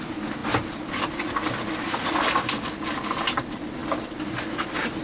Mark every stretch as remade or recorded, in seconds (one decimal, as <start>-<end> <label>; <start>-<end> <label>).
0.0-5.0 recorded

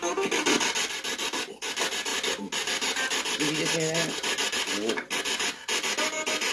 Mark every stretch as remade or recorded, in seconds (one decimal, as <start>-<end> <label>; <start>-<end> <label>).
0.0-6.5 recorded

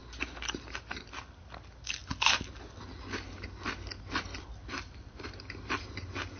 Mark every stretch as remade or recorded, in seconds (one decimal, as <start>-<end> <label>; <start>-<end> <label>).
0.0-6.4 recorded

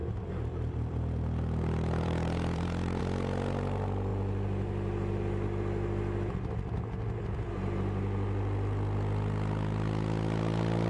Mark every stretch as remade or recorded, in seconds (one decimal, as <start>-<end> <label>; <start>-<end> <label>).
0.0-3.0 remade; 3.0-10.9 recorded

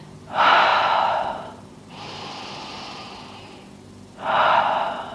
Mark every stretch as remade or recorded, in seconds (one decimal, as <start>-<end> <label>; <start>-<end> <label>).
0.0-0.7 recorded; 0.7-2.3 remade; 2.3-5.1 recorded

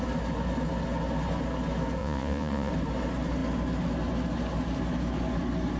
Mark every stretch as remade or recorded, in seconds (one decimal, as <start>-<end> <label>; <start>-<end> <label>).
0.0-2.0 recorded; 2.0-2.7 remade; 2.7-5.8 recorded

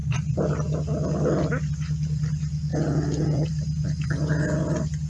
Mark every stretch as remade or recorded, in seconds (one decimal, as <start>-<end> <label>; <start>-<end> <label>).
0.0-5.1 recorded

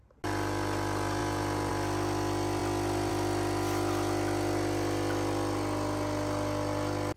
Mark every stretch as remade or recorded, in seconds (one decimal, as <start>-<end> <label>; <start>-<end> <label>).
0.0-1.2 recorded; 1.2-1.7 remade; 1.7-7.2 recorded